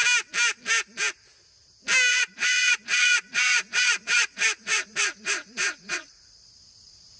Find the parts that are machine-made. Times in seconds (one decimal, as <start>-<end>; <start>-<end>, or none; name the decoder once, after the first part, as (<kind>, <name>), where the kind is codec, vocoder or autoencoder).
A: 2.1-7.2 (vocoder, Vocos)